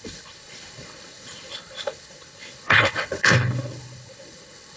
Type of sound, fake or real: fake